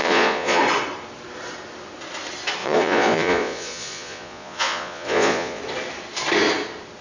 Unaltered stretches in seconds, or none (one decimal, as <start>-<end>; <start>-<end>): 0.6-2.6; 5.6-7.0